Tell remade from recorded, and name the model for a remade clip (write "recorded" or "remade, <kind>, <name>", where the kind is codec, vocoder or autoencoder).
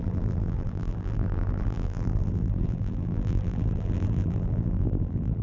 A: remade, vocoder, BigVGAN v2